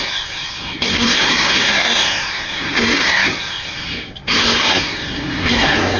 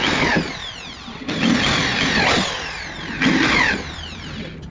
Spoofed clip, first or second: first